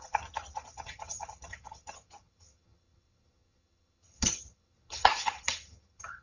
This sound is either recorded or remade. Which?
remade